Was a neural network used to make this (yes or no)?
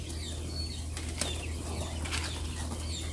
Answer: no